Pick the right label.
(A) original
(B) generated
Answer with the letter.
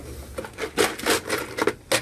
A